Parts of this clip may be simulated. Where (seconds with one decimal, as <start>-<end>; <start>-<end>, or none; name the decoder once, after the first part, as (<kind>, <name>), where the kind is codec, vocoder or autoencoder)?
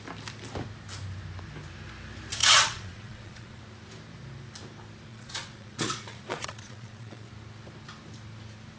2.4-3.6 (vocoder, Vocos); 5.1-7.3